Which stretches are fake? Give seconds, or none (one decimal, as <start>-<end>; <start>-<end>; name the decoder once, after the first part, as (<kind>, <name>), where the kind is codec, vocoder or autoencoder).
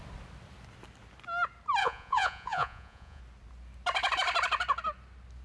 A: 1.8-3.2 (vocoder, Vocos)